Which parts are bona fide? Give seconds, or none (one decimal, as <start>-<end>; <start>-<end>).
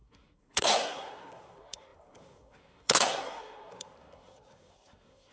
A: none